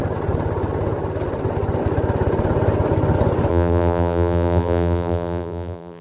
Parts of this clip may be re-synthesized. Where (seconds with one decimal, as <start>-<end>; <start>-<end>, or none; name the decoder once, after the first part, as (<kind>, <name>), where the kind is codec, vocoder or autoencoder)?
3.5-6.0 (vocoder, BigVGAN v2)

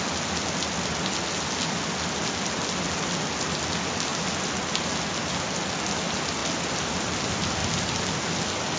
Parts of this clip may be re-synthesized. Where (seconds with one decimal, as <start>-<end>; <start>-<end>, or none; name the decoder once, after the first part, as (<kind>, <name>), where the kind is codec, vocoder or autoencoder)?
none

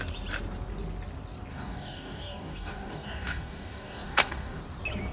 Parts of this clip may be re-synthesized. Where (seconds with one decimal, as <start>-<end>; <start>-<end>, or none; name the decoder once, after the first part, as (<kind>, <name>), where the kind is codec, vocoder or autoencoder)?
1.5-4.6 (codec, DAC)

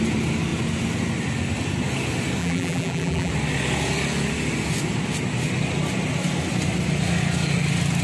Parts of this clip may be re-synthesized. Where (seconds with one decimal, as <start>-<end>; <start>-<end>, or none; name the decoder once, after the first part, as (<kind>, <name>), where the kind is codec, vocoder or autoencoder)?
2.4-3.3 (vocoder, BigVGAN v2)

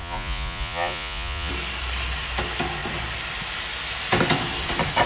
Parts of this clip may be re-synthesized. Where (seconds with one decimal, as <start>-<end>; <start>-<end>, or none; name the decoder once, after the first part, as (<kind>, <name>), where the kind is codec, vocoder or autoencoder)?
0.0-1.5 (vocoder, Vocos)

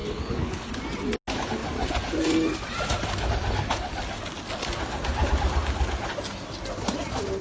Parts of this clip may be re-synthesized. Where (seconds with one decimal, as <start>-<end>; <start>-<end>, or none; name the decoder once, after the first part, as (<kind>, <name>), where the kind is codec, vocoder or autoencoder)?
0.0-0.7 (codec, HILCodec)

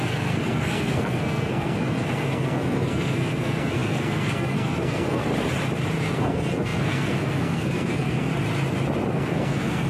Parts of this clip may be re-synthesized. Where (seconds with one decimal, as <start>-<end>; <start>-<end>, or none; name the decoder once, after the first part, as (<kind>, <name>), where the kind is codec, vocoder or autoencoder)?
0.0-5.2 (codec, SNAC); 6.0-8.3; 9.1-9.9